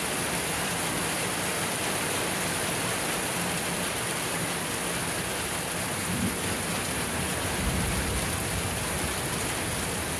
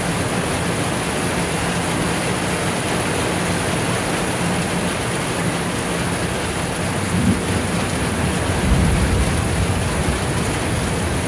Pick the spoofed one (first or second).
first